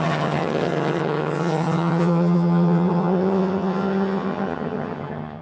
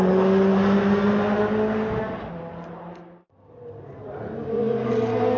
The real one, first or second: second